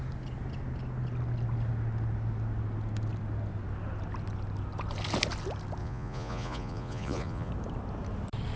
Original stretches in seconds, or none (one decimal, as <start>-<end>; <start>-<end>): 0.0-5.8; 7.5-8.6